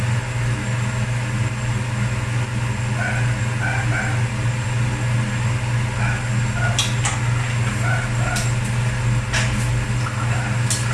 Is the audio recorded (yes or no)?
yes